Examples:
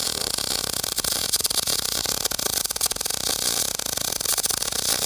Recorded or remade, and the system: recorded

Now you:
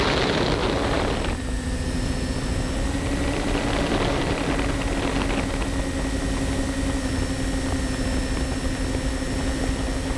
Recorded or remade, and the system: recorded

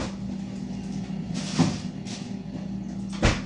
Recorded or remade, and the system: recorded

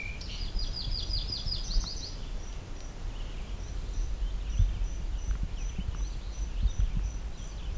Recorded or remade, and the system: recorded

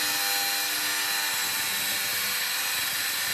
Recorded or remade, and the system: recorded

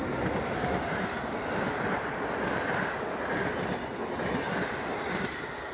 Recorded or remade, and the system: recorded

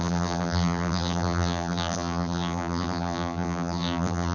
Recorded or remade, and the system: remade, vocoder, BigVGAN v2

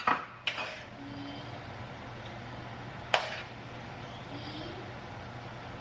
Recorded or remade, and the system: recorded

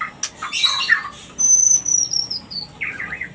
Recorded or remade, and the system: recorded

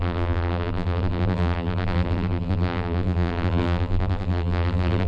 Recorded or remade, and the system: remade, vocoder, BigVGAN v2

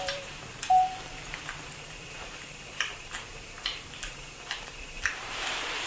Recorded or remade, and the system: remade, vocoder, BigVGAN v2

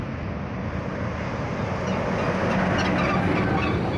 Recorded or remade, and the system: recorded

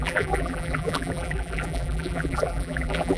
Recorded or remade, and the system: remade, vocoder, BigVGAN v2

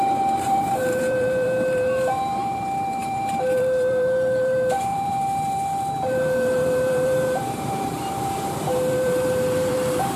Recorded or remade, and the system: remade, vocoder, BigVGAN v2